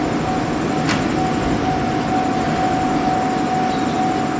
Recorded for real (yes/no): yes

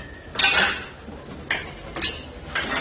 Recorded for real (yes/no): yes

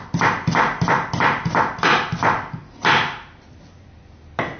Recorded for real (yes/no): yes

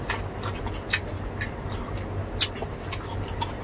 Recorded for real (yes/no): yes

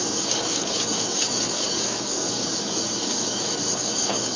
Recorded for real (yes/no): no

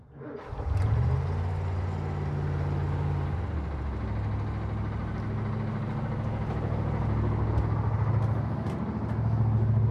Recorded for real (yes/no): yes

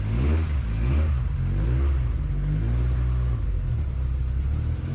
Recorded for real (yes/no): yes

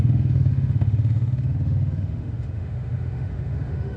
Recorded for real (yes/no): no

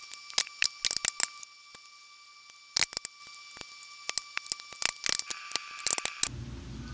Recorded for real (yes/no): yes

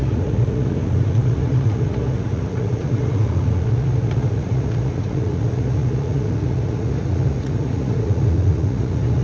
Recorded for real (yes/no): no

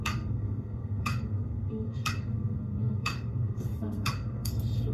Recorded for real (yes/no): no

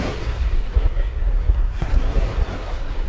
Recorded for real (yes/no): no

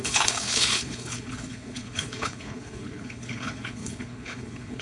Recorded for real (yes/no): no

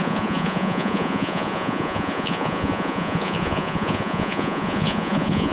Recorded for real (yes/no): no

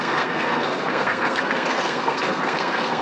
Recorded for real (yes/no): no